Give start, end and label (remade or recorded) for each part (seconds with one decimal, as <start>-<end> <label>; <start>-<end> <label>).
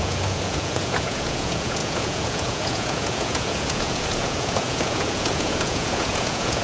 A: 0.0-6.6 remade